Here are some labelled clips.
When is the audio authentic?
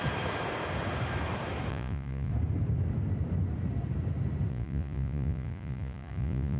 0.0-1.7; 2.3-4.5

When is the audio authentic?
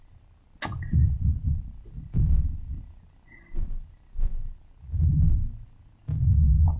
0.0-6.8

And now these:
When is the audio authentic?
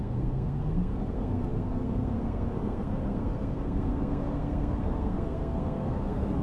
none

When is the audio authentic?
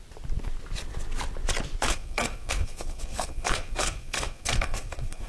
0.0-1.9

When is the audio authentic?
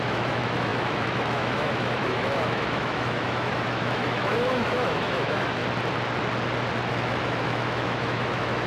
5.6-6.9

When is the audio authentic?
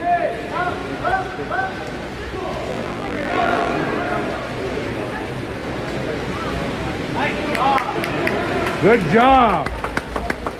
0.0-2.7; 3.7-10.6